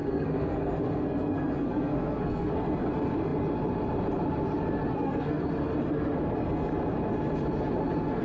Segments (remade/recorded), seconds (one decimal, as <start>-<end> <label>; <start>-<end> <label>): 0.0-2.5 remade; 2.5-4.9 recorded; 4.9-5.5 remade; 5.5-8.2 recorded